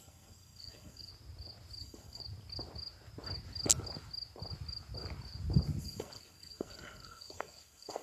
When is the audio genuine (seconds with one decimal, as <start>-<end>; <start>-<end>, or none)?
1.1-1.8; 2.2-5.8